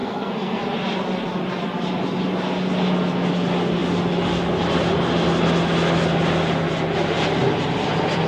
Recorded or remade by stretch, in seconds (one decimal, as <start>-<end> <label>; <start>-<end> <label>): 0.0-0.6 remade; 0.6-8.3 recorded